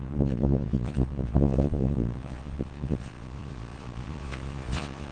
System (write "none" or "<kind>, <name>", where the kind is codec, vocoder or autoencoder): vocoder, Vocos